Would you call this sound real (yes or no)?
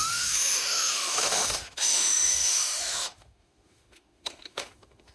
no